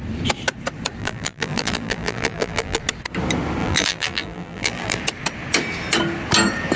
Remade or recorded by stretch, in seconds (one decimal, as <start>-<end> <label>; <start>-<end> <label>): 0.0-1.0 recorded; 1.0-2.8 remade; 2.8-3.6 recorded; 3.6-5.0 remade; 5.0-6.8 recorded